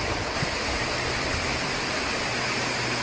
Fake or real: fake